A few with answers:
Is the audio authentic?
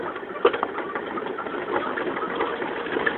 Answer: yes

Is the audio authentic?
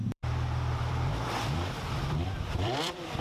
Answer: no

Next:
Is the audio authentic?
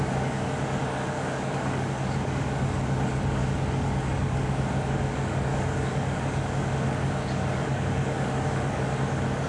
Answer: no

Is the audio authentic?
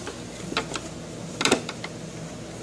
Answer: yes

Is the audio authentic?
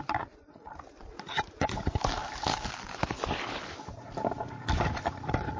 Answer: yes